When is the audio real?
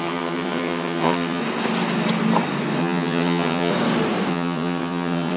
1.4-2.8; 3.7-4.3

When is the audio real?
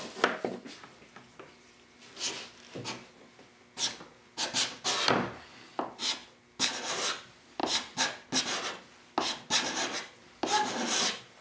0.0-11.4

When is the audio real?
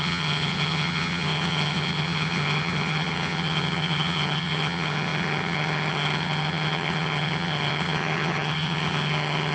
none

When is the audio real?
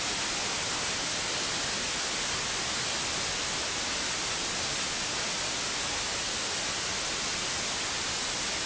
0.0-8.7